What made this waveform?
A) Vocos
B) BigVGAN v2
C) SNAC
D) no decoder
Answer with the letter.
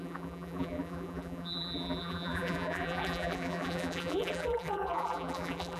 B